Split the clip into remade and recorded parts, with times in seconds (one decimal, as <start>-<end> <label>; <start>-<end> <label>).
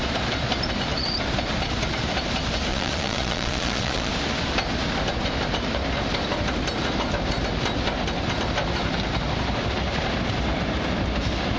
0.0-2.7 recorded; 2.7-4.1 remade; 4.1-11.6 recorded